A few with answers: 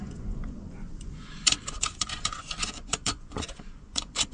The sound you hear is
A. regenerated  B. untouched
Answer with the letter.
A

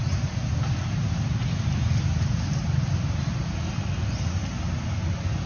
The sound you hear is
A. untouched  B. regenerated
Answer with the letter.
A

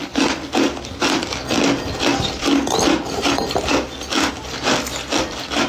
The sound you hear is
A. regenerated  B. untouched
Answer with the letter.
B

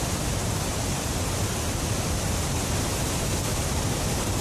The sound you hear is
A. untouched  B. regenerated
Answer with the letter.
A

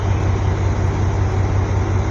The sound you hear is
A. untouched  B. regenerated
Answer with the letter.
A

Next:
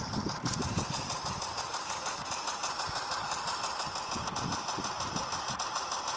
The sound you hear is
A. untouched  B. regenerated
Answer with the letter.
A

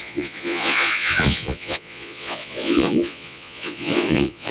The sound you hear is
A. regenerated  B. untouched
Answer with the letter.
A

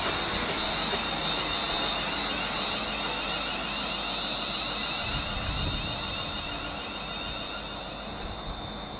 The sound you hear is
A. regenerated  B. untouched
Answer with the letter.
B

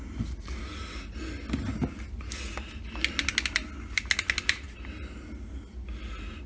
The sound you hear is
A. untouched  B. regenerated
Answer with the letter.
A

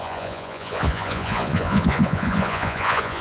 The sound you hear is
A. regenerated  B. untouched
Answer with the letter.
A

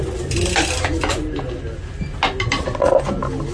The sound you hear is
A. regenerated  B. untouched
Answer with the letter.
B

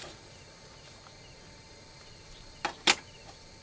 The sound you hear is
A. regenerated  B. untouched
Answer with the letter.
B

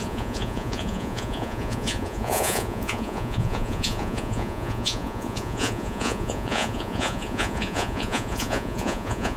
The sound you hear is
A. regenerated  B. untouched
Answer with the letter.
A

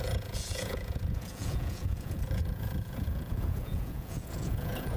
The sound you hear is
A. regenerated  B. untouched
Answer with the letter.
A